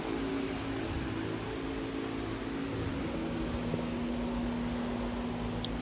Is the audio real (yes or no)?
yes